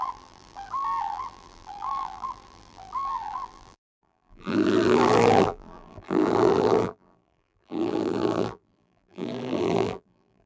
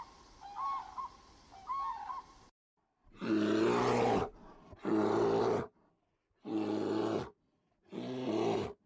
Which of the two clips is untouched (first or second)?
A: second